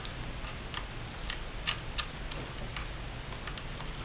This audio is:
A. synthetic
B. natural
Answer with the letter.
B